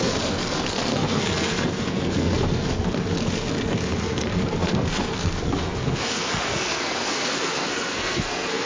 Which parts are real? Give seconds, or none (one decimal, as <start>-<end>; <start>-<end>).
none